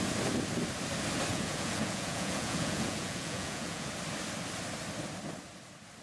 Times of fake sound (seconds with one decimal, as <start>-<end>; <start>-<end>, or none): 1.3-3.9